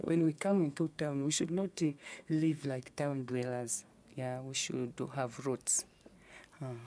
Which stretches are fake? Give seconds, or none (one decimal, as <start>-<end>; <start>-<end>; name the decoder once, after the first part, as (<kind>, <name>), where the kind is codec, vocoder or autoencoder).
0.0-3.9 (codec, SNAC)